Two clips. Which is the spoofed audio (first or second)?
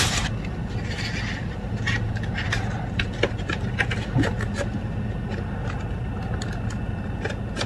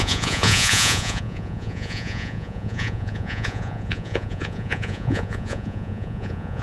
second